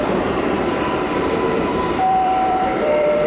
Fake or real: fake